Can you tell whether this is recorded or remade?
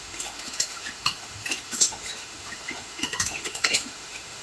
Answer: remade